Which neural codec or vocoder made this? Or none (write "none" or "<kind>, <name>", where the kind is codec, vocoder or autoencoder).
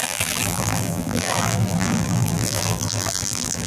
vocoder, BigVGAN v2